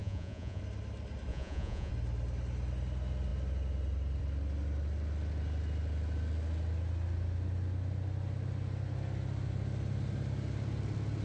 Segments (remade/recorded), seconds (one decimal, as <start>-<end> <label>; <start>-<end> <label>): 0.0-0.6 remade; 0.6-1.3 recorded; 1.3-1.9 remade; 1.9-11.2 recorded